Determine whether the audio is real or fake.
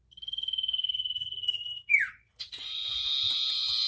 real